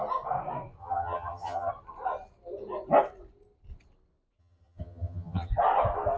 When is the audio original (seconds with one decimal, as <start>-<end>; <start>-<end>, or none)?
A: 0.0-0.8; 1.7-4.4; 5.5-6.2